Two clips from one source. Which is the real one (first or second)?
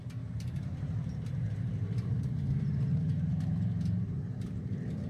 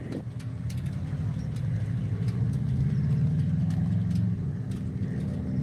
second